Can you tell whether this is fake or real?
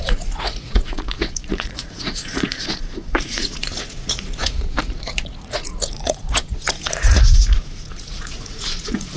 fake